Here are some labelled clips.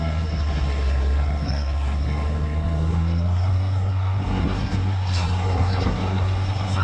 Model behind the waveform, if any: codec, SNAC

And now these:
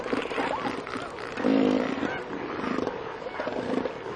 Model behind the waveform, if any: none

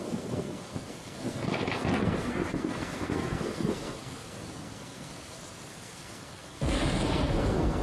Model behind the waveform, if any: codec, SNAC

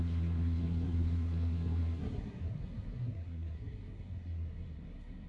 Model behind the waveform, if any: codec, SNAC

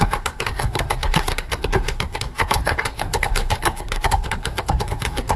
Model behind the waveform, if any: codec, SNAC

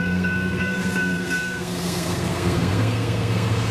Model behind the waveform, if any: codec, SNAC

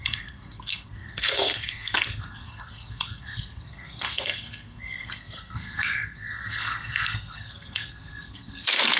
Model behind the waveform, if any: codec, SNAC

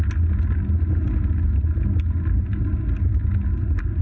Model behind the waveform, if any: none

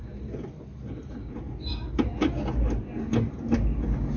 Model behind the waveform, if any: none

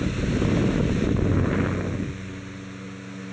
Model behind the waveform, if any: none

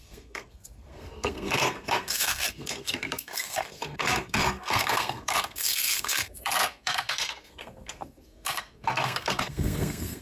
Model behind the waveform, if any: codec, SNAC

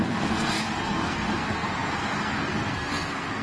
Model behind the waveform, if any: codec, SNAC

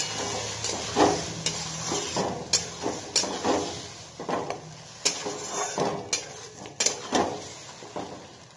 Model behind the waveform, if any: none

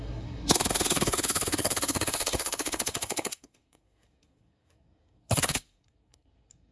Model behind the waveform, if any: codec, SNAC